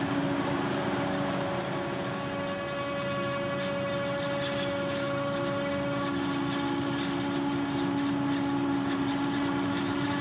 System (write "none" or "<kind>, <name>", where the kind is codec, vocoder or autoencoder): none